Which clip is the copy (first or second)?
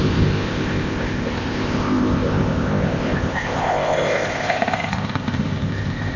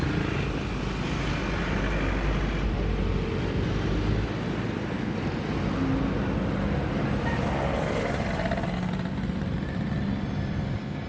first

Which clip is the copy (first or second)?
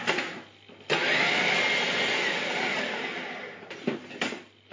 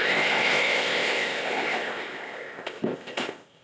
second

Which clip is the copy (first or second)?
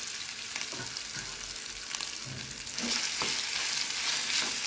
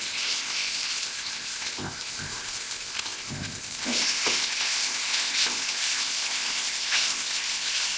second